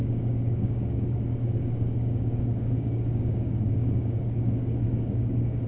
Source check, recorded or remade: remade